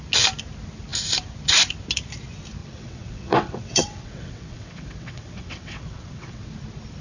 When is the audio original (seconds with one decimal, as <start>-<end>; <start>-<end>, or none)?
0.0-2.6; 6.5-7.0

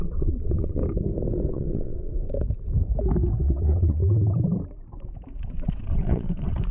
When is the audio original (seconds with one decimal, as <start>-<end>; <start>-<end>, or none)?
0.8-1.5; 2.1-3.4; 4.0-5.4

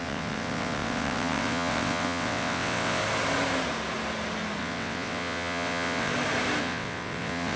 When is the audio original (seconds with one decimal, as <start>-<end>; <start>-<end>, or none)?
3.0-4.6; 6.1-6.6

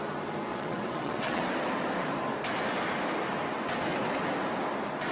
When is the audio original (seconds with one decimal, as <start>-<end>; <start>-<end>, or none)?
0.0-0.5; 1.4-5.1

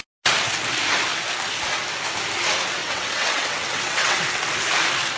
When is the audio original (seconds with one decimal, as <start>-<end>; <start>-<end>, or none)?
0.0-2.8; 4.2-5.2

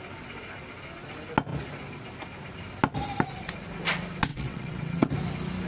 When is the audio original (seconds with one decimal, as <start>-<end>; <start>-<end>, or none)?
0.0-4.3; 5.1-5.7

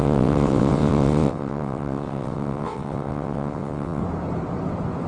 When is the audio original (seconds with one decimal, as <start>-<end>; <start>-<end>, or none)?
4.0-5.1

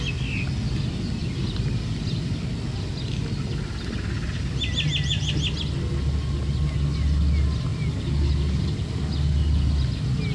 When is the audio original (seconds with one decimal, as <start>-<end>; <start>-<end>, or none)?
0.0-10.3